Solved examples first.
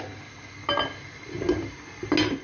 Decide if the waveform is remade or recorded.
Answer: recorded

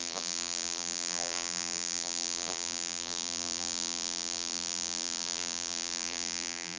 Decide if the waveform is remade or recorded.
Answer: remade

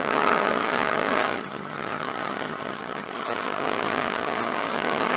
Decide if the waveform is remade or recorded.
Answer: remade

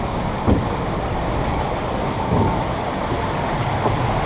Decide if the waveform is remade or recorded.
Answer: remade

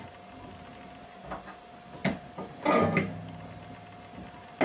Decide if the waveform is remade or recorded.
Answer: recorded